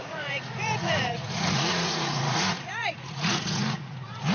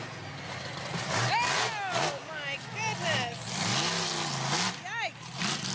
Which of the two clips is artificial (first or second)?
first